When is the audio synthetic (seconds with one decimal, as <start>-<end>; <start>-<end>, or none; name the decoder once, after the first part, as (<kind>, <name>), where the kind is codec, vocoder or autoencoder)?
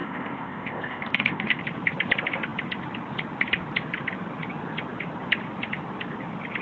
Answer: 0.0-1.6 (codec, ZipCodec)